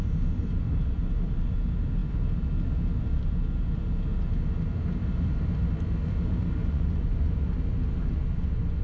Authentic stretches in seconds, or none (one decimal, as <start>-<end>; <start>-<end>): 0.0-6.6; 7.4-8.8